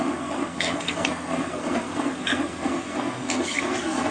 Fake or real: fake